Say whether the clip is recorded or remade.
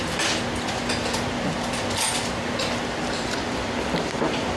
recorded